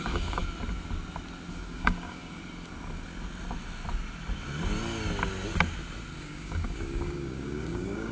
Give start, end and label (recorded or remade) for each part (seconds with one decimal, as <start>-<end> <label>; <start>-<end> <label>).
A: 0.0-0.4 remade; 0.4-1.5 recorded; 1.5-2.4 remade; 2.4-6.2 recorded; 6.2-8.1 remade